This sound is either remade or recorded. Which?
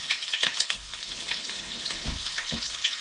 remade